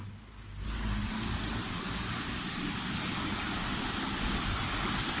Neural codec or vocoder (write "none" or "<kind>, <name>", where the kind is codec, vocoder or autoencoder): none